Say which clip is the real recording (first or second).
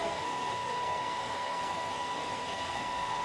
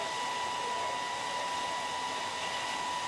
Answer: second